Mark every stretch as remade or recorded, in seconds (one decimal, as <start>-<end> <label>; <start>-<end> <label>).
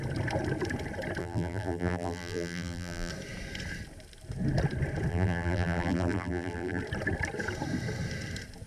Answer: 0.0-1.2 recorded; 1.2-3.1 remade; 3.1-5.1 recorded; 5.1-6.8 remade; 6.8-8.7 recorded